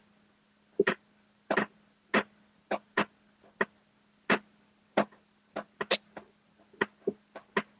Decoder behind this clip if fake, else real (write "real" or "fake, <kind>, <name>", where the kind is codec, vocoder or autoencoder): real